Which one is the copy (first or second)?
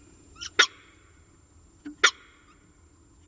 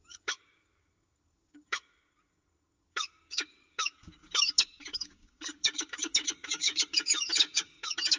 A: second